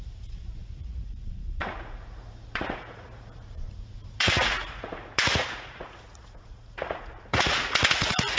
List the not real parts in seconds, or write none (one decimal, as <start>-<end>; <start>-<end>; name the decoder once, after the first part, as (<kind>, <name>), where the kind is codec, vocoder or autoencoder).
0.0-8.4 (vocoder, Vocos)